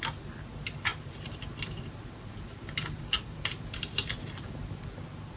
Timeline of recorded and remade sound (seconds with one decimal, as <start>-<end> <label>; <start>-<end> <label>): 0.0-0.9 recorded; 0.9-4.1 remade; 4.1-5.4 recorded